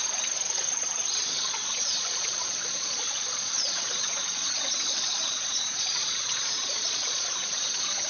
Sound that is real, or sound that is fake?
fake